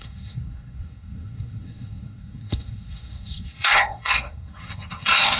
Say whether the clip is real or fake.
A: fake